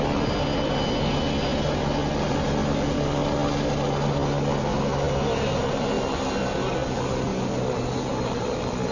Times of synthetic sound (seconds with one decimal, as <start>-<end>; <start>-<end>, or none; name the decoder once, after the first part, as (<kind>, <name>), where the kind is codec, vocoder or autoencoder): none